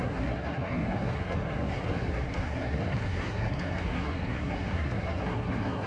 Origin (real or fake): fake